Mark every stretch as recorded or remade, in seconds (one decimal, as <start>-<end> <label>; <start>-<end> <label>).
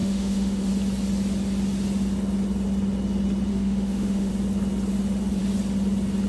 0.0-0.7 remade; 0.7-3.5 recorded; 3.5-4.3 remade; 4.3-6.3 recorded